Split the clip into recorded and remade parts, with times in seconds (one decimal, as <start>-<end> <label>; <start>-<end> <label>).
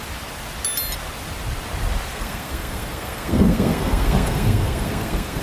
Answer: 0.0-2.1 recorded; 2.1-5.4 remade